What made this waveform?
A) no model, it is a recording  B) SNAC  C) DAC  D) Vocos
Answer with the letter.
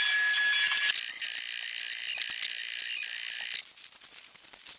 A